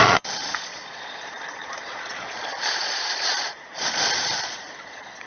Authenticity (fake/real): fake